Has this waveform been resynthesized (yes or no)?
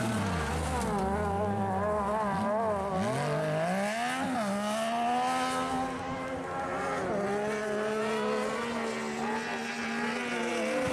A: no